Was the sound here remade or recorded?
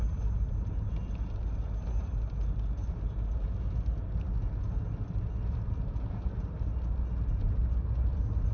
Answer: recorded